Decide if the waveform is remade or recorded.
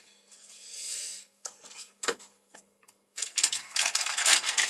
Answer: remade